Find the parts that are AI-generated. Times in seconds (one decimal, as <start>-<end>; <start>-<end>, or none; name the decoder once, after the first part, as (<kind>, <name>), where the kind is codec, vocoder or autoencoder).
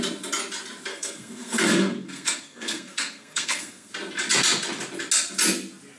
0.9-3.9 (codec, SNAC)